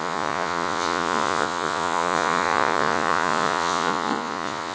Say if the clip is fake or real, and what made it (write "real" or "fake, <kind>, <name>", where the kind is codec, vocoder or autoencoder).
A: fake, vocoder, Vocos